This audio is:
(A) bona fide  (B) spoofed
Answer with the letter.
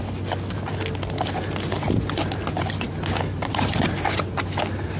A